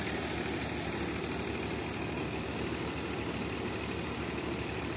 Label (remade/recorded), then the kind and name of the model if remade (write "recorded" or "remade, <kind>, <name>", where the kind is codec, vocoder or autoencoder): recorded